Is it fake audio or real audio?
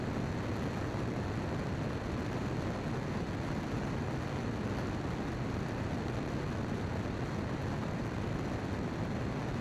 real